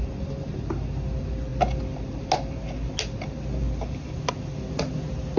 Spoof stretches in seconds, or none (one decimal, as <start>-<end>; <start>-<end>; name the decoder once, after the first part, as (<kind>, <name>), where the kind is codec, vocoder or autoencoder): none